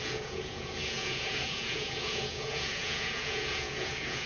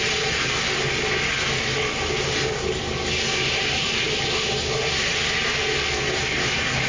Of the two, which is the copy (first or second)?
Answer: first